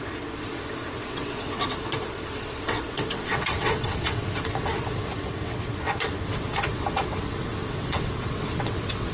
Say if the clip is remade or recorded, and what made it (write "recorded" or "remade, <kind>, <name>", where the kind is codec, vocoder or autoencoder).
remade, vocoder, WaveNeXt